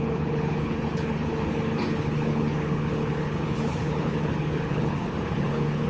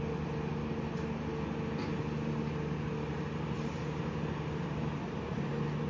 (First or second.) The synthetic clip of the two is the first